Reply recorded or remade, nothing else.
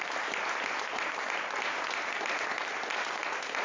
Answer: recorded